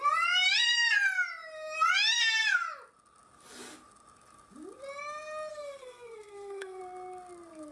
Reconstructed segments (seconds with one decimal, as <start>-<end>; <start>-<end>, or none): 5.5-6.8